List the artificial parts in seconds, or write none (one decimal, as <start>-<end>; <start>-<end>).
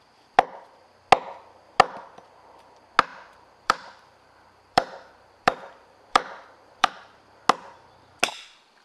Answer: 3.1-6.9